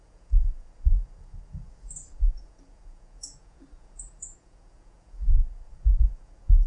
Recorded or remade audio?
remade